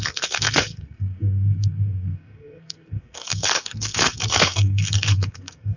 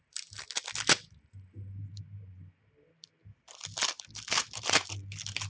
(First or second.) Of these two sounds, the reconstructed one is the first